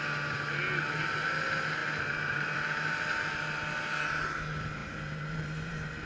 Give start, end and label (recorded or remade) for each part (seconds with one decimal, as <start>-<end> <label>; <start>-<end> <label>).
0.0-1.8 recorded; 1.8-3.1 remade; 3.1-4.8 recorded; 4.8-6.1 remade